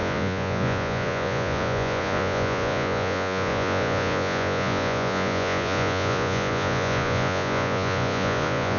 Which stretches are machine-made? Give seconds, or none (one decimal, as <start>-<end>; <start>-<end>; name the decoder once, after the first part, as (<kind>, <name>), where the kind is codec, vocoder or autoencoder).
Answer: 0.0-8.8 (vocoder, Vocos)

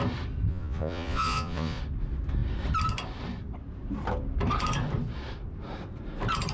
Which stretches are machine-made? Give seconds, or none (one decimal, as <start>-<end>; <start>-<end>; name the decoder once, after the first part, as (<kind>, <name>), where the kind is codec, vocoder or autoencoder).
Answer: 0.5-1.8 (vocoder, Vocos)

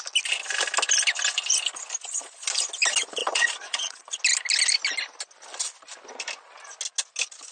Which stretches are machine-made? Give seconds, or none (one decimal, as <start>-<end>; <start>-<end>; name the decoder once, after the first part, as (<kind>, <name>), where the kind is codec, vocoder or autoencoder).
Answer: 3.2-4.1 (vocoder, Vocos)

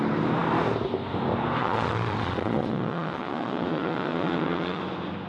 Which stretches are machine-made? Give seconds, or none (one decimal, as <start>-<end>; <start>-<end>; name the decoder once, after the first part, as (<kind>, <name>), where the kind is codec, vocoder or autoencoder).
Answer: 1.6-4.8 (vocoder, Vocos)